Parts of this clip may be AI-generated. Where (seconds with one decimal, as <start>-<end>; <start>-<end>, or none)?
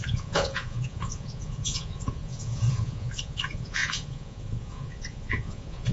0.0-5.9